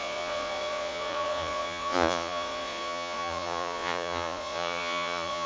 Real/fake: fake